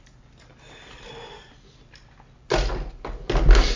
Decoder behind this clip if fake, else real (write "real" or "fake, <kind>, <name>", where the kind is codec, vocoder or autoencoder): real